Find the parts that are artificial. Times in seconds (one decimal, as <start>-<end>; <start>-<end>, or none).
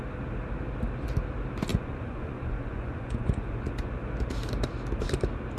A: 1.7-3.9